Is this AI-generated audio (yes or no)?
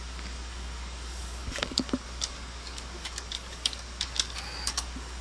yes